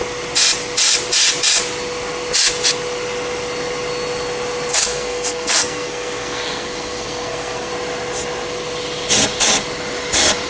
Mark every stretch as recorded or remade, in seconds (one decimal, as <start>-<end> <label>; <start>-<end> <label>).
0.0-4.7 recorded; 4.7-7.7 remade; 7.7-10.5 recorded